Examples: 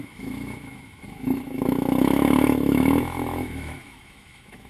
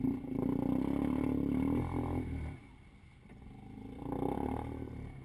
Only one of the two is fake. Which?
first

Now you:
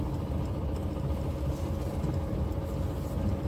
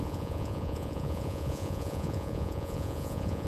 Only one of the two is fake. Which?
second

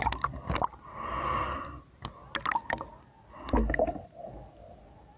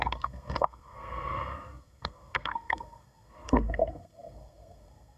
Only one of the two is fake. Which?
second